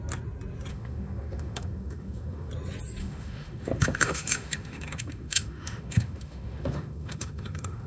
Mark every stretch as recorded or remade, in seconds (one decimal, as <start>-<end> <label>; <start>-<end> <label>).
0.0-0.7 recorded; 0.7-2.5 remade; 2.5-3.0 recorded; 3.0-7.9 remade